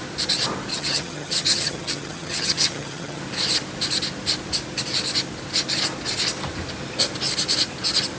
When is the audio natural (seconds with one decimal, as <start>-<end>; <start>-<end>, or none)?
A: 0.0-0.7; 3.2-8.2